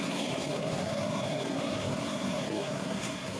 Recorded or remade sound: remade